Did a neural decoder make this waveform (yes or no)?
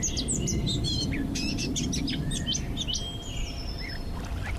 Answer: no